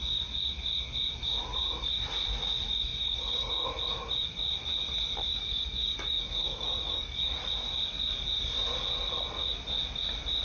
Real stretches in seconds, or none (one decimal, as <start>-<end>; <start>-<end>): 0.0-2.9; 3.5-5.3; 7.5-10.4